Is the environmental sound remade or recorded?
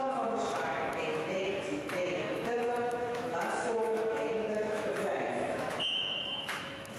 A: remade